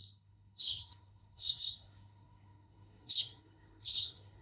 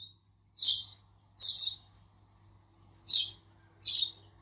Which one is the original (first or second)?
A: second